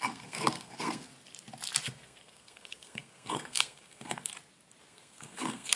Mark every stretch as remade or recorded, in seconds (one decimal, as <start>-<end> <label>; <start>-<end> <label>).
0.0-1.1 remade; 1.1-1.8 recorded; 1.8-4.3 remade; 4.3-4.8 recorded; 4.8-5.8 remade